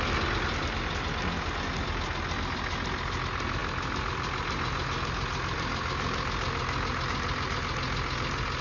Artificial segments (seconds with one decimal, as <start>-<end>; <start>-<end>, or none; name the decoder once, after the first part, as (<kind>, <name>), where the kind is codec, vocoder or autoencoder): none